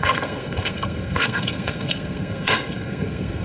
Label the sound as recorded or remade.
remade